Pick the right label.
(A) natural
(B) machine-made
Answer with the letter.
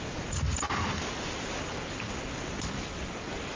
A